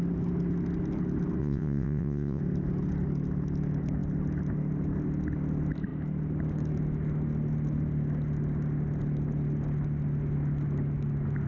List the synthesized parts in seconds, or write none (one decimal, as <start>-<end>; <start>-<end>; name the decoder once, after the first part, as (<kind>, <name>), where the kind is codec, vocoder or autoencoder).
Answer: 1.4-2.4 (vocoder, WaveNeXt)